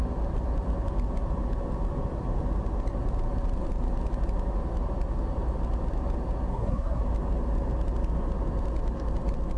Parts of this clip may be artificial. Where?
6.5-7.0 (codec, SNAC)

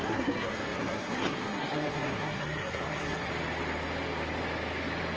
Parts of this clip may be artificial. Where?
0.0-3.3 (codec, SNAC)

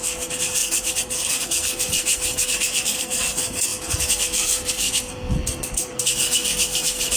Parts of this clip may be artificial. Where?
0.0-7.2 (codec, SNAC)

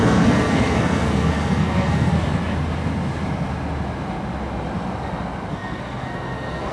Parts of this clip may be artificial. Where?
0.0-2.1 (codec, SNAC); 5.5-6.7